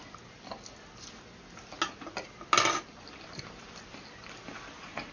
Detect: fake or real real